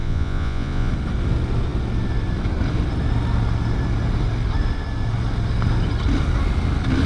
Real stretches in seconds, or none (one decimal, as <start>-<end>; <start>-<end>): 0.9-7.1